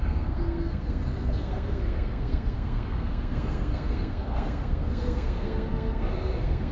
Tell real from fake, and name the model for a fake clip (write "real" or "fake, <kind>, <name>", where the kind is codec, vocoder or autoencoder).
fake, codec, SNAC